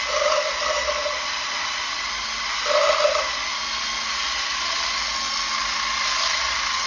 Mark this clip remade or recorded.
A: recorded